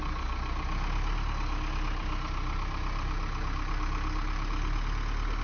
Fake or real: real